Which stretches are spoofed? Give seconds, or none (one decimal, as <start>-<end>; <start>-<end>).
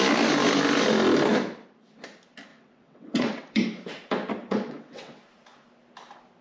2.5-3.6; 4.4-5.2